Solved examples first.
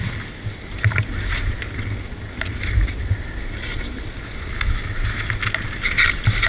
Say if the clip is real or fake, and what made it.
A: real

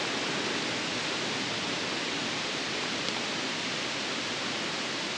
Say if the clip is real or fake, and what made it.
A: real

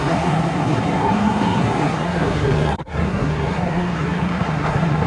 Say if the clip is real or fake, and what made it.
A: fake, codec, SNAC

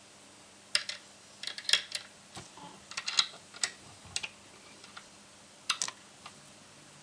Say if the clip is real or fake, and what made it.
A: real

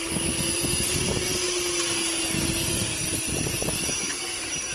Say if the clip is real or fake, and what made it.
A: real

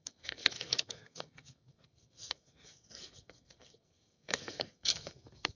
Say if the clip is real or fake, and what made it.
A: fake, codec, SNAC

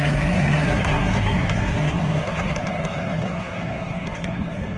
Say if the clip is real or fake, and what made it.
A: fake, codec, SNAC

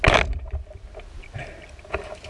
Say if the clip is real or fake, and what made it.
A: real